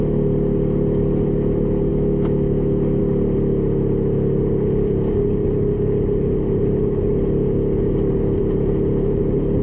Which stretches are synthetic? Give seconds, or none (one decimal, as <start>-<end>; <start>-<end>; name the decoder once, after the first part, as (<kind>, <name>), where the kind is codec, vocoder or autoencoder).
1.9-3.0 (autoencoder, DAC-VAE)

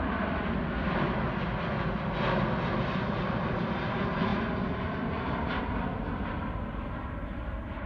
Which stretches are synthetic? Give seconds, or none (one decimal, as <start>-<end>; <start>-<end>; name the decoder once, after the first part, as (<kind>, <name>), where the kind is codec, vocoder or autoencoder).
none